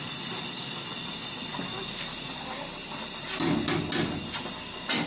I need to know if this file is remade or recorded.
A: recorded